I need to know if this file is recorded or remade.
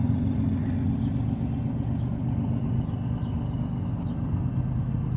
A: recorded